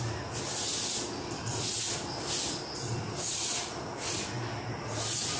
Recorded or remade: recorded